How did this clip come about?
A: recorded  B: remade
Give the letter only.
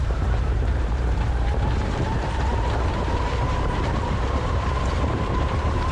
B